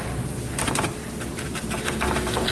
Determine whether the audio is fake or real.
real